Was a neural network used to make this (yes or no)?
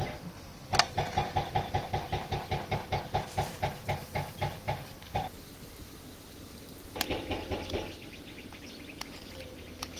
yes